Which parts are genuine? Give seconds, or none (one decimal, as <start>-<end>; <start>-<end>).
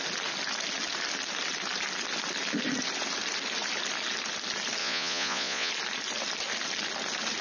0.0-4.8; 5.7-7.4